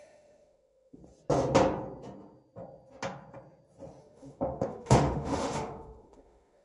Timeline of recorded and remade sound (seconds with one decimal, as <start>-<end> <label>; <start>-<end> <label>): 0.0-1.0 remade; 1.0-4.0 recorded; 4.0-6.6 remade